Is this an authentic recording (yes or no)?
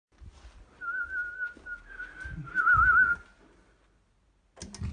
yes